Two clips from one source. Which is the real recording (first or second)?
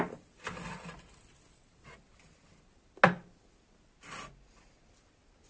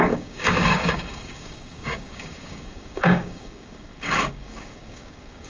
first